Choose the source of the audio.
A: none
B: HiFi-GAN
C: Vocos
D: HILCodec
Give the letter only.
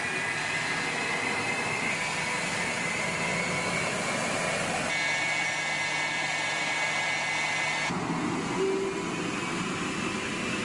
A